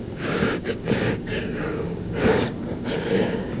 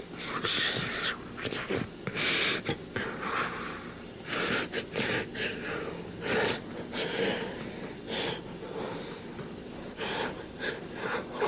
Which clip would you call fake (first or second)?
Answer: first